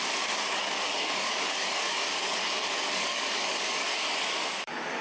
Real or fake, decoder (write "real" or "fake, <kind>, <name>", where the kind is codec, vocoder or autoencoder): fake, codec, DAC